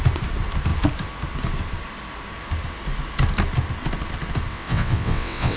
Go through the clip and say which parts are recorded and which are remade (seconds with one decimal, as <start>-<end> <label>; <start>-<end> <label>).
0.0-4.5 recorded; 4.5-5.6 remade